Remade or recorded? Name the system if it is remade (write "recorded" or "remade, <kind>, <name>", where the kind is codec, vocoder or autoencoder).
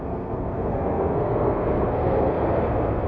remade, codec, SNAC